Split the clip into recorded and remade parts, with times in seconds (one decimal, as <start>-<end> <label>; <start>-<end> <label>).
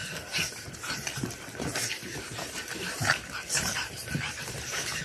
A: 0.0-2.0 recorded; 2.0-5.0 remade